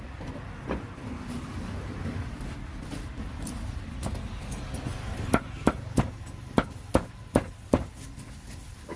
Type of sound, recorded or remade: recorded